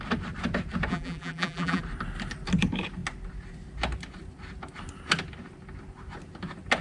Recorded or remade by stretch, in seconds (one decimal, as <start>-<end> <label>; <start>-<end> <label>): 0.0-0.9 recorded; 0.9-1.8 remade; 1.8-6.8 recorded